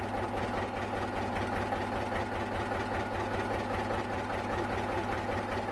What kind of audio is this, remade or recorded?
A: recorded